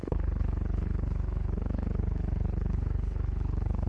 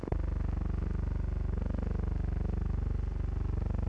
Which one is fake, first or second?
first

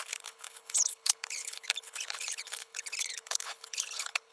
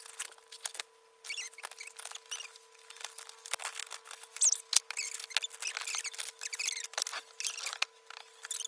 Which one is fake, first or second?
first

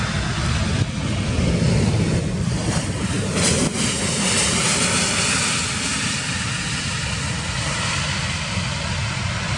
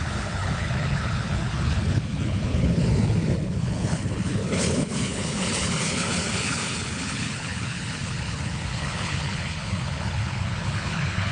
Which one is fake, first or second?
second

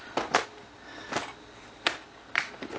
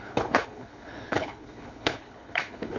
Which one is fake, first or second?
second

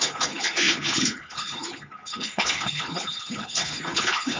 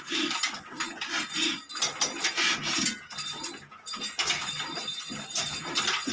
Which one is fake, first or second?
first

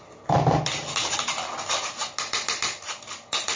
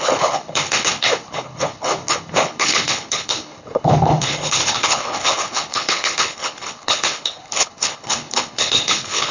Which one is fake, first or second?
second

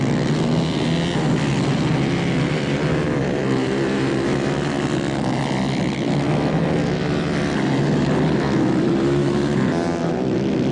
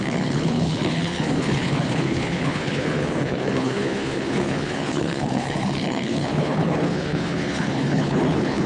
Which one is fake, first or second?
second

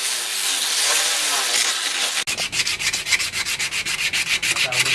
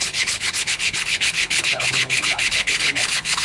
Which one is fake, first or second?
second